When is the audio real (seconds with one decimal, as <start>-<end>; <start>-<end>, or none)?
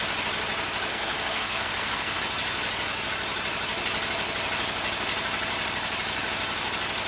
0.0-0.9; 2.2-7.1